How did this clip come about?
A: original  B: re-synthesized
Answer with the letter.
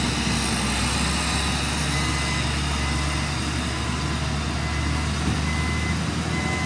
A